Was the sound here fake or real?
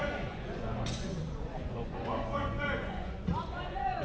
fake